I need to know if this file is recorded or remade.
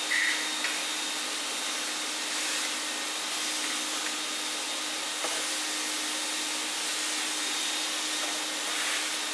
recorded